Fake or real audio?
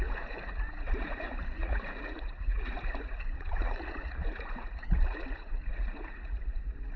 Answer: fake